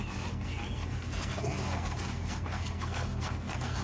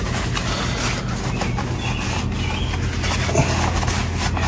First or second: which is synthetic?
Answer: first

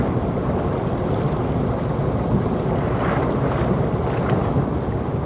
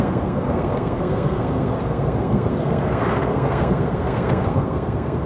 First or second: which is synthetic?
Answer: second